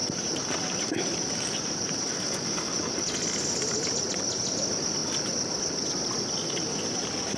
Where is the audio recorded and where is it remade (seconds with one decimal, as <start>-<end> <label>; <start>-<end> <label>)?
0.0-2.3 remade; 2.3-7.4 recorded